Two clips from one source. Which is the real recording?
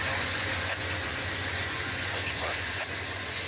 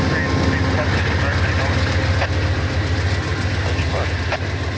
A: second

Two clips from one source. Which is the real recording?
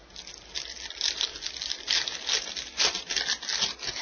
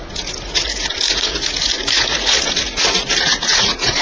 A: first